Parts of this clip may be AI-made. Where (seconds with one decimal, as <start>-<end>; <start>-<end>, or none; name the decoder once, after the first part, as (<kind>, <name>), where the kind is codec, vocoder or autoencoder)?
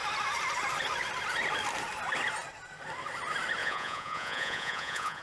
3.6-5.2 (vocoder, Vocos)